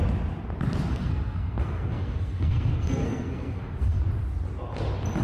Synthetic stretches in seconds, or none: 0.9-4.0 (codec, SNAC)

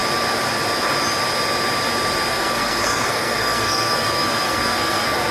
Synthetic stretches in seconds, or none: 2.3-5.3 (codec, SNAC)

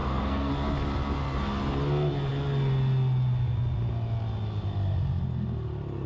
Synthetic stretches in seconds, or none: 0.0-0.5 (codec, SNAC)

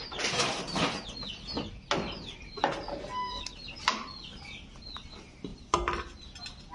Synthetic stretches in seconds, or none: 2.9-3.4 (codec, SNAC)

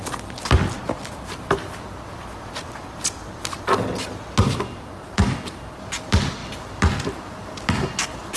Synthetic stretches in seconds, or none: none

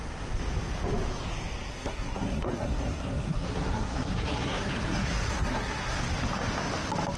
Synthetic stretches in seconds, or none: 1.7-6.0 (codec, SNAC)

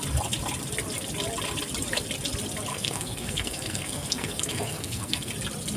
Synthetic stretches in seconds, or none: 2.7-5.3 (codec, SNAC)